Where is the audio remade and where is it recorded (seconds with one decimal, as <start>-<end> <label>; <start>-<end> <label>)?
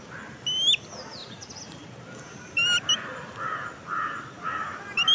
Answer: 0.0-1.2 recorded; 1.2-1.9 remade; 1.9-5.1 recorded